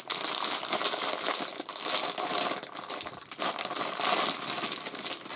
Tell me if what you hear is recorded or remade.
recorded